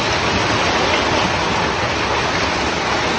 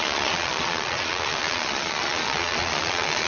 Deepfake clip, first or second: second